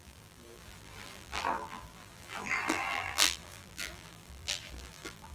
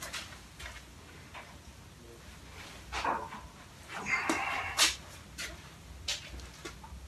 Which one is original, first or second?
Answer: second